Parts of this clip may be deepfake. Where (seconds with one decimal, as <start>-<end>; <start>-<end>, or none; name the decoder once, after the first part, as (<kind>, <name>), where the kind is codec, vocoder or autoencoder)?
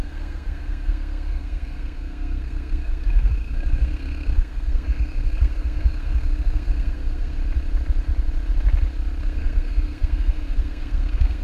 0.0-7.4 (codec, SNAC); 9.2-11.4